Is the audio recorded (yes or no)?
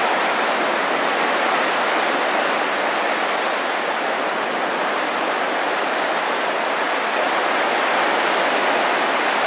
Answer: yes